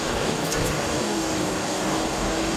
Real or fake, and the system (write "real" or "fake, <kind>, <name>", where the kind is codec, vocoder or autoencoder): fake, codec, DAC